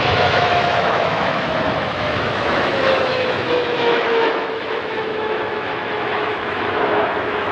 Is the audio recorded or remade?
remade